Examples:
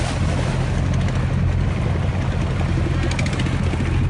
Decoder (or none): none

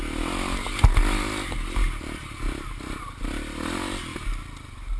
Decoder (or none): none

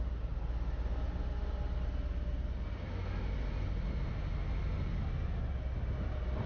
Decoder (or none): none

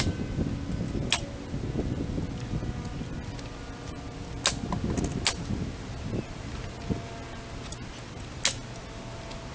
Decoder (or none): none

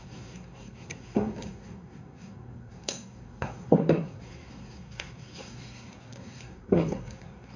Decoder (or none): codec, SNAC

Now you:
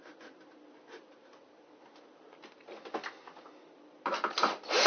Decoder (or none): none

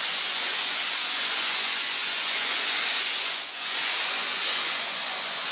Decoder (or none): vocoder, Vocos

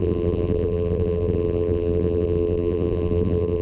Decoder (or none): vocoder, BigVGAN v2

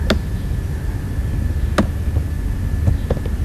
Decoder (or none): none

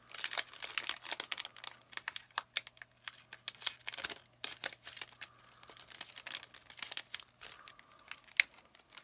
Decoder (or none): none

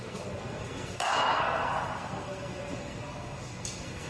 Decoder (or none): codec, SNAC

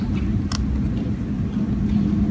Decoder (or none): none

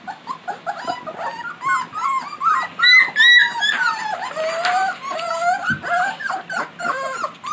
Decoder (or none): none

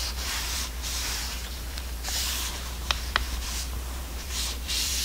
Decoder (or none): vocoder, BigVGAN v2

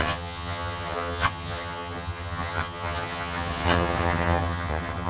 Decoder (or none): vocoder, HiFi-GAN